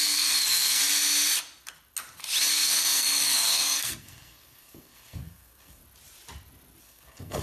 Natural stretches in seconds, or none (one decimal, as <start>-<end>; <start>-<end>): 0.8-2.5; 5.8-6.8